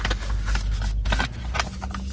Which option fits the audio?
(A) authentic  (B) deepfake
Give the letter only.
A